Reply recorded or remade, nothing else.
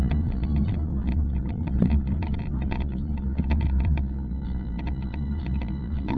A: remade